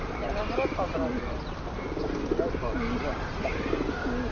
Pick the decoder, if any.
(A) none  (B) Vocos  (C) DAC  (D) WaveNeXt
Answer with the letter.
A